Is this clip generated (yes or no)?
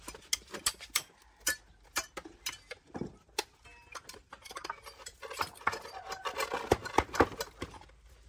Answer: no